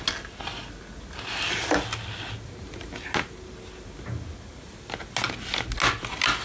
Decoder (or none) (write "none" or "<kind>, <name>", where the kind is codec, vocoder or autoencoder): none